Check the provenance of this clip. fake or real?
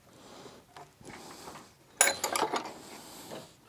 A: real